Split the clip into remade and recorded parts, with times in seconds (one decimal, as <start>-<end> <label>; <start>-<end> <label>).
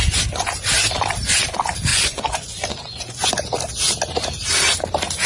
0.0-1.9 recorded; 1.9-3.3 remade; 3.3-5.3 recorded